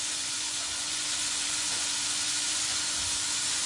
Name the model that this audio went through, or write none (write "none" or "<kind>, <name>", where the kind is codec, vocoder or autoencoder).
vocoder, Vocos